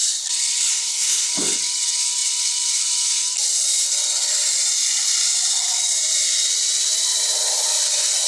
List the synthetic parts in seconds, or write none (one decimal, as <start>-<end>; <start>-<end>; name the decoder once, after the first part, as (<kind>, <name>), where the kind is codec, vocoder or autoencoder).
0.7-1.3 (codec, SNAC)

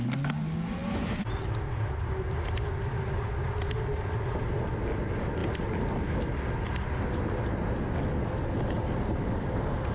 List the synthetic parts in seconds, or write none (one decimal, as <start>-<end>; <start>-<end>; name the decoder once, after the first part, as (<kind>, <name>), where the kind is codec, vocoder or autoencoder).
none